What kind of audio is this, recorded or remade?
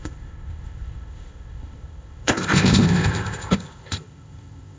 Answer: remade